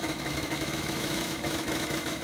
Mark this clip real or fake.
fake